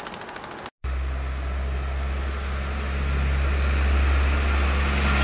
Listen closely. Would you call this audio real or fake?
real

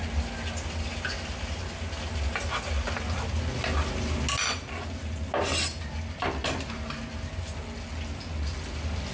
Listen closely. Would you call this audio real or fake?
real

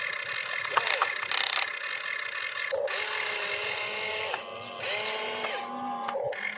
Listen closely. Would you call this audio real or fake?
real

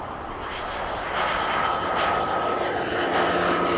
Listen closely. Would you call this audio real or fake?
real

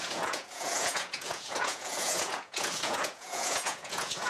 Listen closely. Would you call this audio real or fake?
fake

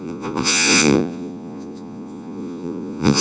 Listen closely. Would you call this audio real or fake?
fake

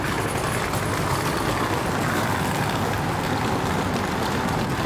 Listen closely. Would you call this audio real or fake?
real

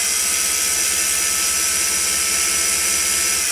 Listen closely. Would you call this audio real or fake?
real